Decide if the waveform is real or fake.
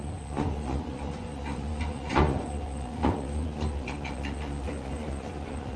fake